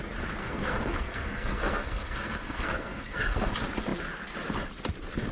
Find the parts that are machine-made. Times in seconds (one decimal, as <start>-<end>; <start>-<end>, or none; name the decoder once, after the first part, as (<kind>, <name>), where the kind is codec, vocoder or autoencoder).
0.4-3.5 (codec, SNAC)